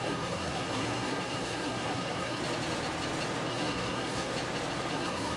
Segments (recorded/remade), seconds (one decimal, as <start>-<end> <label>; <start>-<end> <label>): 0.0-2.4 remade; 2.4-3.5 recorded; 3.5-4.3 remade; 4.3-4.9 recorded; 4.9-5.4 remade